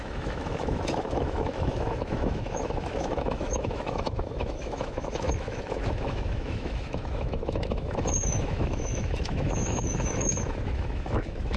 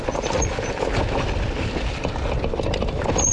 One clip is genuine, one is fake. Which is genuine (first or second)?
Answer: second